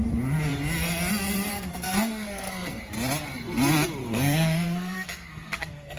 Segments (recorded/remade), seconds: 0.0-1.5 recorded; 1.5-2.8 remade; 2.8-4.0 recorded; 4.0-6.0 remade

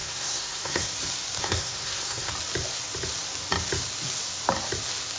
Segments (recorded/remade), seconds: 0.0-0.9 remade; 0.9-1.4 recorded; 1.4-2.3 remade; 2.3-5.2 recorded

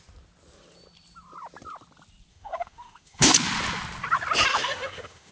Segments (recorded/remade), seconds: 0.0-2.3 recorded; 2.3-3.3 remade; 3.3-4.5 recorded; 4.5-5.3 remade

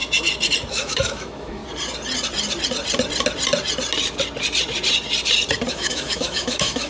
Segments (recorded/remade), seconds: 0.0-0.7 recorded; 0.7-1.6 remade; 1.6-5.7 recorded; 5.7-6.9 remade

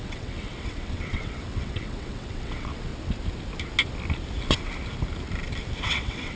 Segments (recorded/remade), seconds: 0.0-2.9 remade; 2.9-5.8 recorded; 5.8-6.4 remade

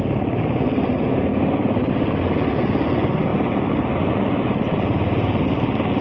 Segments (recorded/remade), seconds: 0.0-6.0 recorded

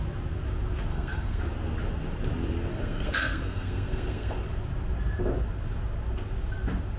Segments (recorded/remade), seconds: 0.0-0.9 recorded; 0.9-1.4 remade; 1.4-2.7 recorded; 2.7-4.3 remade; 4.3-7.0 recorded